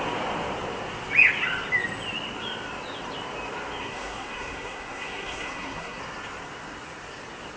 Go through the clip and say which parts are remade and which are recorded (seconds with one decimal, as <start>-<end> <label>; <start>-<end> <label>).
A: 0.0-3.8 recorded; 3.8-6.0 remade; 6.0-7.6 recorded